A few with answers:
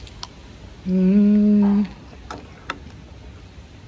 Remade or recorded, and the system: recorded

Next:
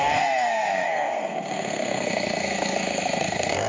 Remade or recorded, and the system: remade, codec, SNAC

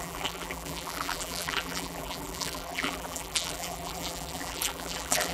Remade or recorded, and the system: remade, vocoder, BigVGAN v2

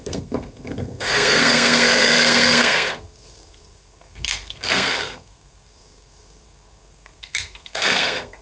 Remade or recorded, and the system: remade, codec, SNAC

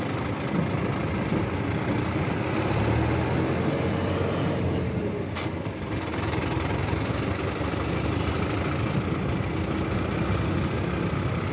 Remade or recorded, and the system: recorded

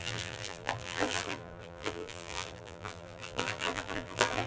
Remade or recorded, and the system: remade, vocoder, BigVGAN v2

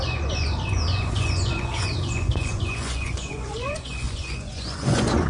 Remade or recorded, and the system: remade, vocoder, Vocos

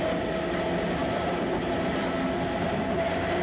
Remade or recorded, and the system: recorded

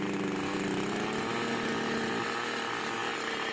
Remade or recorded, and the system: recorded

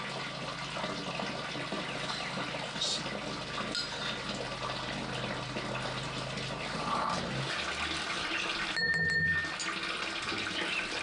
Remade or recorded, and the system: recorded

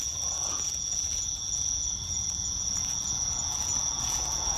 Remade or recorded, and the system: remade, vocoder, Vocos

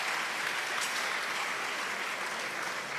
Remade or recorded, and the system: recorded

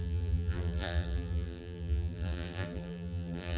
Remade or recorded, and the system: remade, vocoder, BigVGAN v2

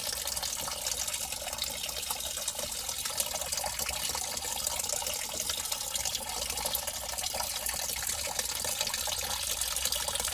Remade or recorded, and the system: recorded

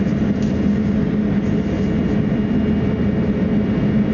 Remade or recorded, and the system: recorded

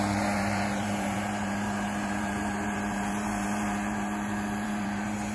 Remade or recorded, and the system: remade, vocoder, BigVGAN v2